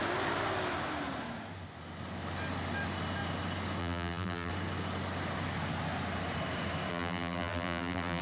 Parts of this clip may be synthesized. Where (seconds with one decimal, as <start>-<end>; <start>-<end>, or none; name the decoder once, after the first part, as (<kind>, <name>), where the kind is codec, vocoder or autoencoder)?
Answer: 3.8-4.5 (vocoder, BigVGAN v2); 6.9-8.2